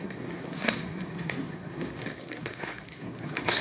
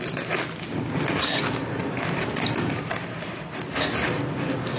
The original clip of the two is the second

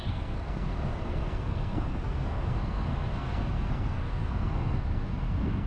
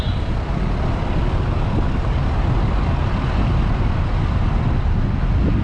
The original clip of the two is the second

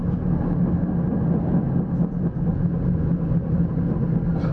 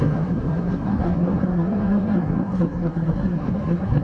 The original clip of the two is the first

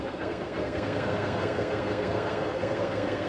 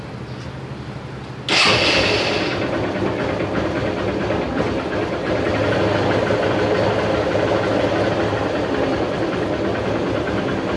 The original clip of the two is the second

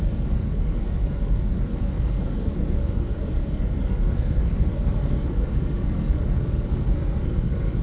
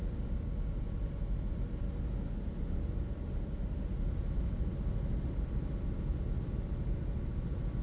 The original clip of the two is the second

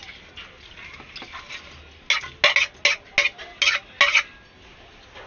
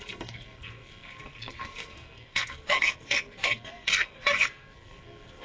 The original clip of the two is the first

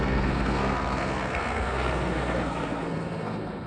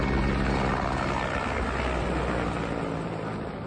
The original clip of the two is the second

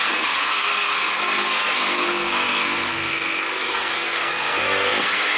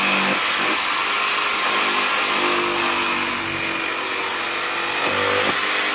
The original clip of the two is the second